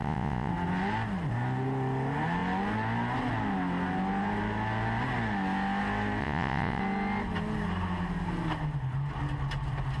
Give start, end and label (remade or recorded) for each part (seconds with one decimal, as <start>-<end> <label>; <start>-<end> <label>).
0.0-0.5 remade; 0.5-6.2 recorded; 6.2-6.8 remade; 6.8-10.0 recorded